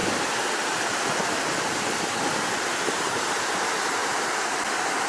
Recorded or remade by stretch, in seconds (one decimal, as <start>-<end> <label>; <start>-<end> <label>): 0.0-3.1 remade; 3.1-4.0 recorded; 4.0-5.1 remade